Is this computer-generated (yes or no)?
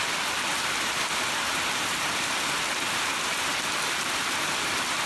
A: yes